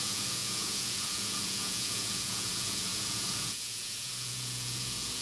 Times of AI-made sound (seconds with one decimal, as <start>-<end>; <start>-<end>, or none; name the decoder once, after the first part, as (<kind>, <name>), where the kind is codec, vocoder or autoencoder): 0.0-5.2 (vocoder, Vocos)